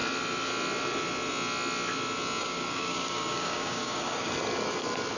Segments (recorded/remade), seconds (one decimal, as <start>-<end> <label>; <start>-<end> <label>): 0.0-2.4 recorded; 2.4-4.3 remade; 4.3-5.2 recorded